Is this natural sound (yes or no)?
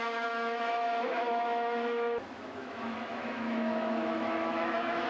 no